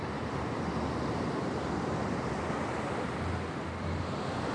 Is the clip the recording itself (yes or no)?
yes